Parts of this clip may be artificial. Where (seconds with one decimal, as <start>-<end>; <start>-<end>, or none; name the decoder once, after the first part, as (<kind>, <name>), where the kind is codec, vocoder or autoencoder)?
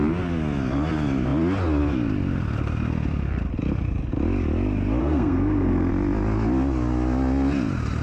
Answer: 5.0-5.9 (codec, SNAC)